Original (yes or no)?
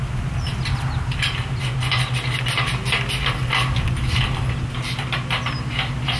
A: yes